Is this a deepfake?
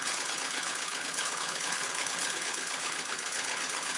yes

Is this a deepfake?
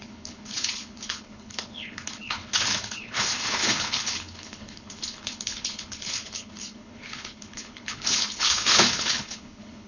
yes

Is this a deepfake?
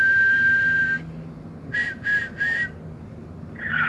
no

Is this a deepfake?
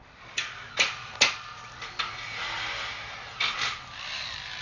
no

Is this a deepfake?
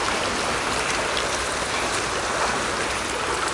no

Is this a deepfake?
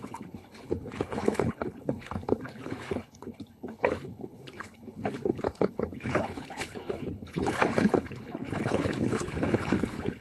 yes